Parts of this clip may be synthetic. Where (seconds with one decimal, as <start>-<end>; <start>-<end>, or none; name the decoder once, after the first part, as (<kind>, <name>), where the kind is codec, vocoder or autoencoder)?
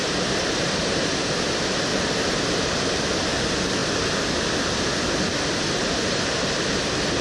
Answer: 0.0-1.5 (vocoder, BigVGAN v2); 1.9-2.6